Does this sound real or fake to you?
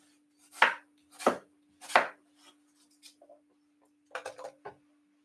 real